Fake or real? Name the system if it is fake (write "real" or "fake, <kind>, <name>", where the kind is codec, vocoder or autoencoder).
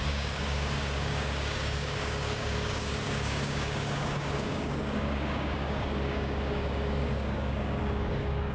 fake, codec, DAC